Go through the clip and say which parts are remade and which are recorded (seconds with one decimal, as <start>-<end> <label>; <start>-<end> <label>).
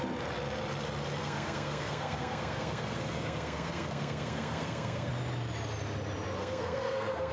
0.0-1.2 recorded; 1.2-5.1 remade; 5.1-6.4 recorded; 6.4-7.3 remade